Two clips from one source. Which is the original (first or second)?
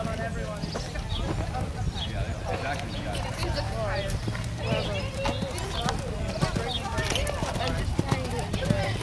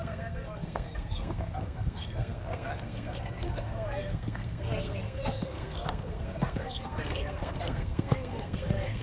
first